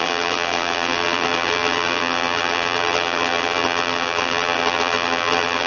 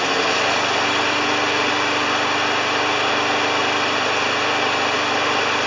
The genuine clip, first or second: second